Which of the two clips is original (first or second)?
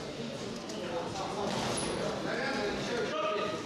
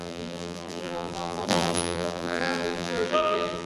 first